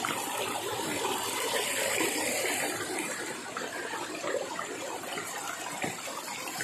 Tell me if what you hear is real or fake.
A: fake